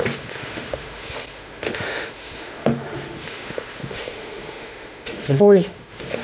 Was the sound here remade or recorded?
remade